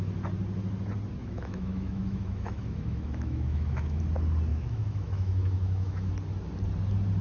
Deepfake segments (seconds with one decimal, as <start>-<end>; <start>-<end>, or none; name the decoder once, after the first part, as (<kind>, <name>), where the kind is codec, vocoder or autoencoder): 1.2-4.0 (autoencoder, DAC-VAE); 4.5-6.1